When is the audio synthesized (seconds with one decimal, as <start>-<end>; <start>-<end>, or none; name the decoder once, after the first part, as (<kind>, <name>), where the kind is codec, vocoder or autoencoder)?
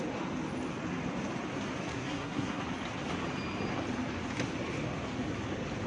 1.9-2.6 (codec, SNAC)